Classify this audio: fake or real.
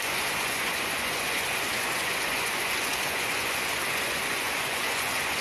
fake